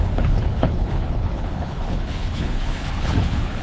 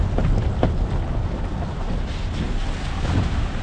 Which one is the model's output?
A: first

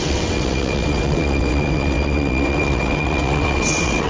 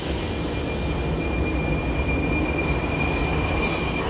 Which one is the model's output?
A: first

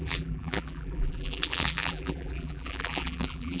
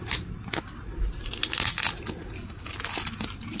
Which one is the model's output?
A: first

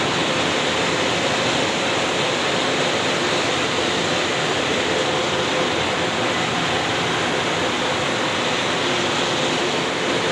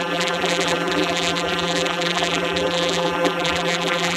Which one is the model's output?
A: second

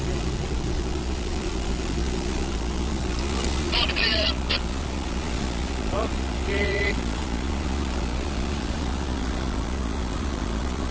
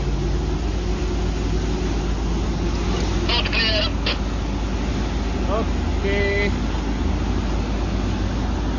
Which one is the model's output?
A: first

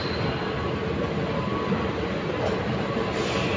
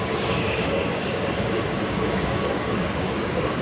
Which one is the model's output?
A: second